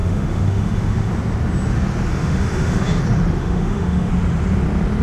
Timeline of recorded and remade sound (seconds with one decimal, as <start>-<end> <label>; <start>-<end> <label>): 0.0-1.1 remade; 1.1-2.1 recorded; 2.1-3.0 remade; 3.0-3.4 recorded; 3.4-4.1 remade; 4.1-5.0 recorded